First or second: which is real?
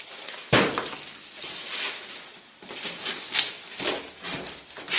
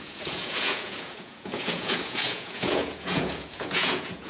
first